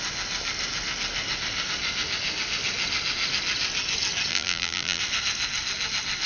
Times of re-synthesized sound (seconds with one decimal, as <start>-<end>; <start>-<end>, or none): 4.3-5.0